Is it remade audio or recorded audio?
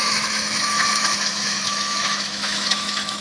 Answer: remade